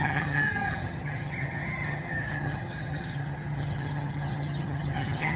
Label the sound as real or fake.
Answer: fake